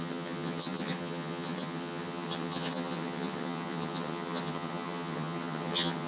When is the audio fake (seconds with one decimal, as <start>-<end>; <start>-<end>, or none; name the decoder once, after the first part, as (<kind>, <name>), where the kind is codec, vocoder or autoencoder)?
0.0-6.1 (vocoder, HiFi-GAN)